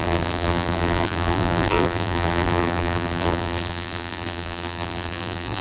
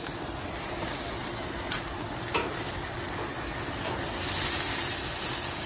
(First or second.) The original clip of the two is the second